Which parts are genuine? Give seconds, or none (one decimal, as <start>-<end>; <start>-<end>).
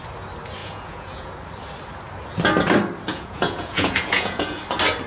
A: 0.0-0.6; 1.3-3.1; 4.6-5.1